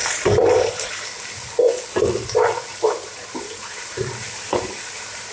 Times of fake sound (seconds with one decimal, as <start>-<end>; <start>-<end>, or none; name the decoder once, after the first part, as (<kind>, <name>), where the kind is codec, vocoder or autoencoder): 0.0-0.9 (vocoder, BigVGAN v2); 3.0-5.3